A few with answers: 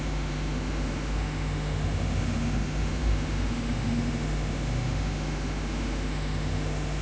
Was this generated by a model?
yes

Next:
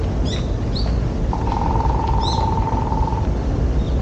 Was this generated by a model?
no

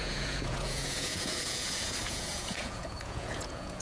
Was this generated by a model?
yes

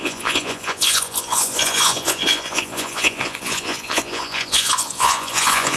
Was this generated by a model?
yes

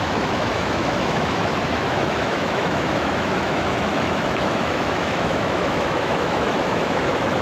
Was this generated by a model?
yes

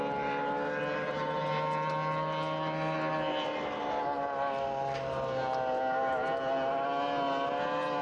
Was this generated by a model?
no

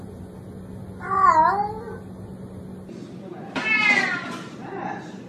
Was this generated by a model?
no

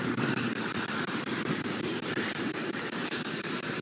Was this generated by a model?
yes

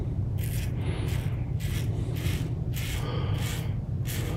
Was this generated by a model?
no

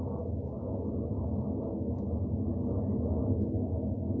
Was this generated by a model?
no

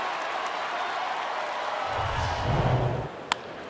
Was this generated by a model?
no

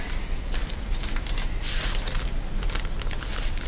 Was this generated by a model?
no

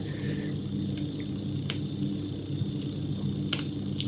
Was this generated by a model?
no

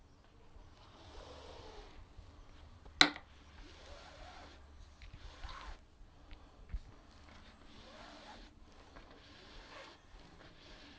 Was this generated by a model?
no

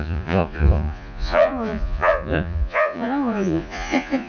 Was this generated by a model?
yes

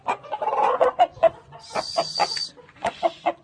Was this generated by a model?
yes